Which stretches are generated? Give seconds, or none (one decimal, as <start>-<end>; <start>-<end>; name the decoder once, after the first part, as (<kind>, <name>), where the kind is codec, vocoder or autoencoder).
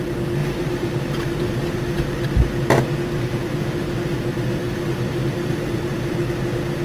0.4-2.1 (vocoder, BigVGAN v2); 4.6-6.1